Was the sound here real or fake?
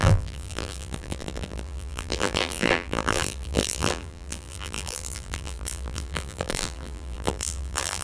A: fake